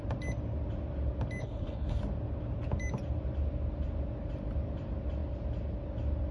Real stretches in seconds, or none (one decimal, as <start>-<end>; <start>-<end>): 0.0-1.4; 2.0-6.3